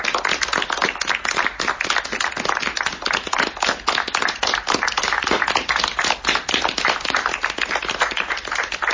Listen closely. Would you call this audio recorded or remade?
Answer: recorded